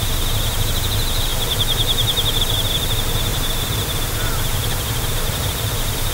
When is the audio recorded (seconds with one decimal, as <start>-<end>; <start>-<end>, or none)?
none